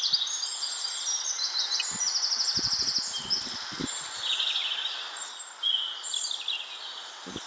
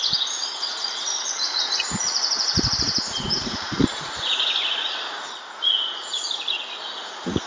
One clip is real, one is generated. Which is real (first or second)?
first